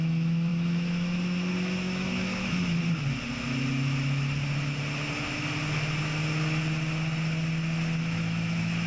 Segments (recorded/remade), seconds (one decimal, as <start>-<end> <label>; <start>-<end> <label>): 0.0-2.8 remade; 2.8-8.0 recorded; 8.0-8.9 remade